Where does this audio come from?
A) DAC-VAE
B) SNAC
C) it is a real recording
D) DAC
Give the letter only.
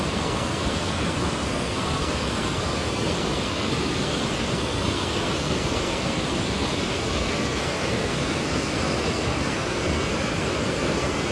B